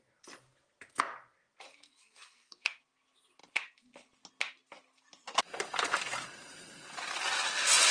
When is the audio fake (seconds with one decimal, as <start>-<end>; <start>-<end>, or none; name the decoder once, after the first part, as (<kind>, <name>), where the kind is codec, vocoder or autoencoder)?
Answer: 1.7-2.8 (codec, SNAC)